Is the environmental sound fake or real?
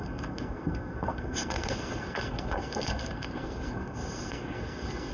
fake